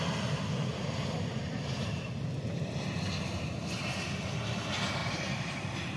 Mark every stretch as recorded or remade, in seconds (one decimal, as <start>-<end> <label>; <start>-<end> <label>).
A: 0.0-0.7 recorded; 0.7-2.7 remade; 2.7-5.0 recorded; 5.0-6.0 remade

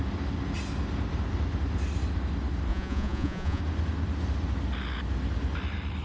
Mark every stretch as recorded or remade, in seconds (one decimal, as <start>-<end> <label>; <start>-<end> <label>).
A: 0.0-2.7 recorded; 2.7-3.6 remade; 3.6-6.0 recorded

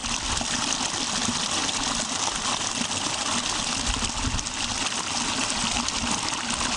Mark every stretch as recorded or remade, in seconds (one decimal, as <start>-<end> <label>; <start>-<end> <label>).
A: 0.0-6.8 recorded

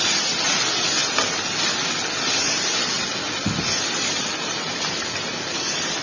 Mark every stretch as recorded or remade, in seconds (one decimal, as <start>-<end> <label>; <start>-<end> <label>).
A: 0.0-6.0 recorded

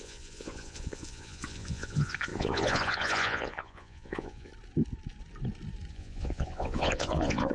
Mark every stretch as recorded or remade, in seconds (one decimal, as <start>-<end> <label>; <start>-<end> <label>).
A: 0.0-4.5 remade; 4.5-5.9 recorded; 5.9-7.5 remade

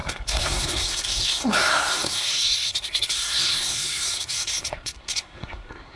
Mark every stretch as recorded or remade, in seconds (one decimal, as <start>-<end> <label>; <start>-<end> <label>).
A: 0.0-6.0 remade

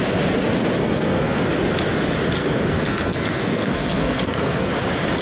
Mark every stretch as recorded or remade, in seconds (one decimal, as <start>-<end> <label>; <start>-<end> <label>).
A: 0.0-0.8 recorded; 0.8-1.4 remade; 1.4-2.4 recorded; 2.4-4.7 remade; 4.7-5.2 recorded